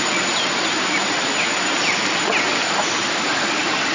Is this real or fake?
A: real